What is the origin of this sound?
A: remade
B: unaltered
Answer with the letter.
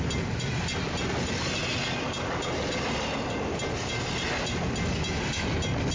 B